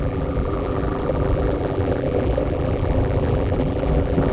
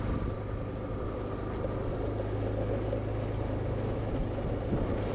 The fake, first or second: first